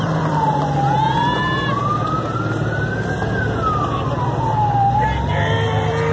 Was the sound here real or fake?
real